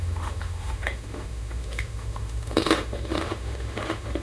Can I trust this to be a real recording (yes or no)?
no